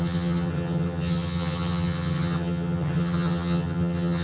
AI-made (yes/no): yes